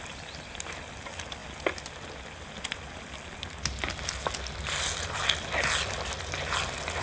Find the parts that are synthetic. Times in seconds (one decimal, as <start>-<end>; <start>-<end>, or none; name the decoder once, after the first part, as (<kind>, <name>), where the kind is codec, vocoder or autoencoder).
none